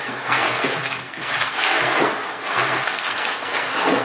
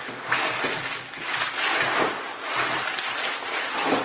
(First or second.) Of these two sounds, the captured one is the second